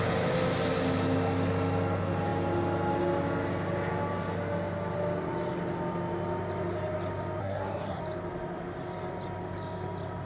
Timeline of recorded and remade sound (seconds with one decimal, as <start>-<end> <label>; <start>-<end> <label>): 0.0-7.4 recorded; 7.4-8.0 remade; 8.0-10.3 recorded